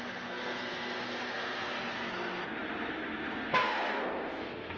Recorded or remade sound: remade